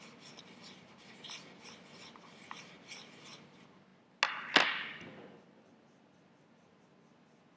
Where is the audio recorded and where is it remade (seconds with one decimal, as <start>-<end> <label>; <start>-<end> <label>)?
0.0-7.6 recorded